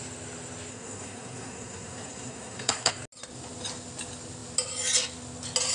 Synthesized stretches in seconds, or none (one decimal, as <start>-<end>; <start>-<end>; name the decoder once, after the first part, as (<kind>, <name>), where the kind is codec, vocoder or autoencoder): 0.7-2.9 (codec, SNAC)